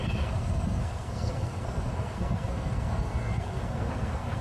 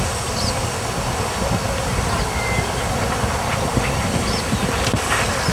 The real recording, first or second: second